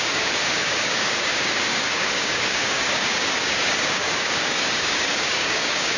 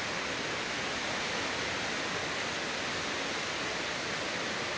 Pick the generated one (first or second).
first